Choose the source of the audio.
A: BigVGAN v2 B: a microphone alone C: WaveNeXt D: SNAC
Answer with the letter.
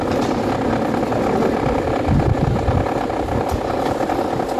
B